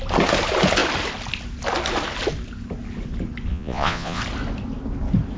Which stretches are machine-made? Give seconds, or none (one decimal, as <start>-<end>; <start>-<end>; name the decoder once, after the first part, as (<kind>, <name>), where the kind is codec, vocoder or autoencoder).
3.5-4.2 (vocoder, Vocos)